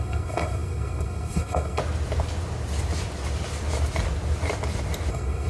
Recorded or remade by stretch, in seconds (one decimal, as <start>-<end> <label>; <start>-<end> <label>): 0.0-1.8 remade; 1.8-5.1 recorded; 5.1-5.5 remade

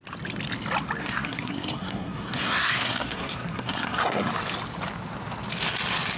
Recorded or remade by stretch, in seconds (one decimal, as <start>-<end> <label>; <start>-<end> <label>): 0.0-1.0 recorded; 1.0-4.3 remade; 4.3-6.2 recorded

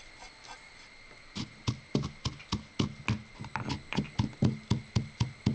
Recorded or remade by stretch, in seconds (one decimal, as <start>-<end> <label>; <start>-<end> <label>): 0.0-5.5 recorded

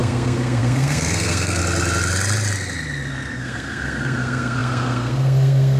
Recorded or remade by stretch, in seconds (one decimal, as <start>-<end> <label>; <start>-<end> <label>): 0.0-1.6 remade; 1.6-3.1 recorded; 3.1-5.8 remade

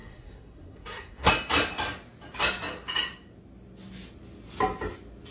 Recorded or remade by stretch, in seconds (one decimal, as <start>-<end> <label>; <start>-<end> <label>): 0.0-1.3 remade; 1.3-5.3 recorded

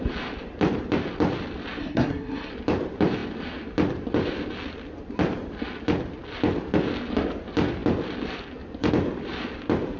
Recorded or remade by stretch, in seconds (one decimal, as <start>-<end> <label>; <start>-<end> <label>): 0.0-1.8 recorded; 1.8-2.5 remade; 2.5-10.0 recorded